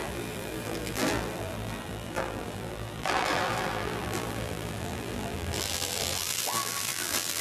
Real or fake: fake